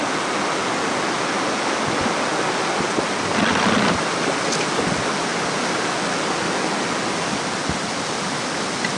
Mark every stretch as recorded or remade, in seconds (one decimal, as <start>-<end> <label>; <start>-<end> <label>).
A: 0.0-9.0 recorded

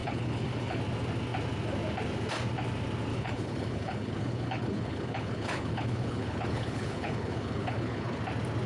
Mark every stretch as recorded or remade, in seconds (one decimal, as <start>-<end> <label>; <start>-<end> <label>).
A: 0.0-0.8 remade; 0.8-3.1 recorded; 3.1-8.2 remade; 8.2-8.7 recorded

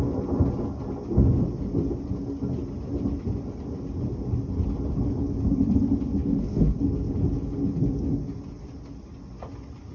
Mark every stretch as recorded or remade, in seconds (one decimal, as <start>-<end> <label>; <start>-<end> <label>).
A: 0.0-6.2 recorded; 6.2-7.7 remade; 7.7-9.9 recorded

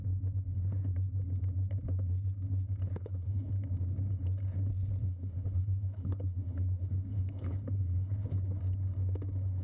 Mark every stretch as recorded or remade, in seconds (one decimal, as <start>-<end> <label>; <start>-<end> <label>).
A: 0.0-3.0 recorded; 3.0-3.5 remade; 3.5-5.0 recorded; 5.0-8.6 remade; 8.6-9.6 recorded

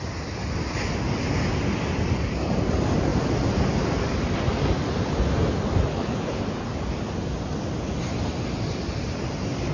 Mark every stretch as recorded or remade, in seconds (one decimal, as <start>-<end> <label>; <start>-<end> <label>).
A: 0.0-5.9 recorded; 5.9-6.4 remade; 6.4-9.7 recorded

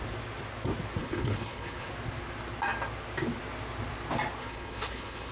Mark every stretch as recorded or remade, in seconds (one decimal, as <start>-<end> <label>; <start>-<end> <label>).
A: 0.0-1.0 recorded; 1.0-1.9 remade; 1.9-4.4 recorded; 4.4-5.3 remade

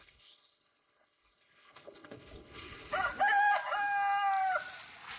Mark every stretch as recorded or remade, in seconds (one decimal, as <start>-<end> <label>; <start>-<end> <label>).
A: 0.0-2.9 remade; 2.9-5.2 recorded